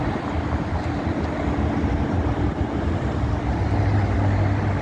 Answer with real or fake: real